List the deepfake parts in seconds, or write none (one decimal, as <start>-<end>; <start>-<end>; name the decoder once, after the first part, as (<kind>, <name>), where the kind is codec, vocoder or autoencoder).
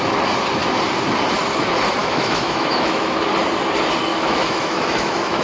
2.0-3.3 (autoencoder, DAC-VAE); 4.1-5.4